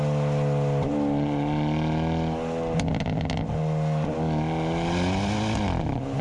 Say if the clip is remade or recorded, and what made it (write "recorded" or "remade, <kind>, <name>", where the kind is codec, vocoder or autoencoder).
recorded